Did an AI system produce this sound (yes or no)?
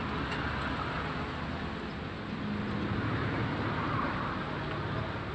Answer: no